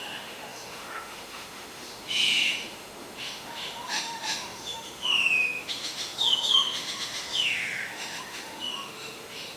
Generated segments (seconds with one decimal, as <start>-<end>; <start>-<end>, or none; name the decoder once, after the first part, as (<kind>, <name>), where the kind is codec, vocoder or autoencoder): 0.0-9.6 (autoencoder, DAC-VAE)